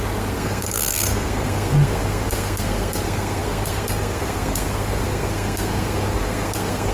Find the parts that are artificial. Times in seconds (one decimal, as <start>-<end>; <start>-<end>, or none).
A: 0.0-6.9